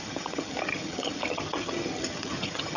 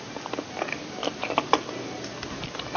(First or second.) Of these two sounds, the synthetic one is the first